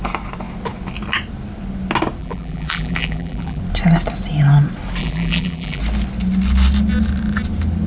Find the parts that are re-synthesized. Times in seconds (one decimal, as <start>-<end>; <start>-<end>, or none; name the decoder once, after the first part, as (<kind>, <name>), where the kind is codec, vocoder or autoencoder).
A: 2.2-3.6 (vocoder, BigVGAN v2); 5.0-5.8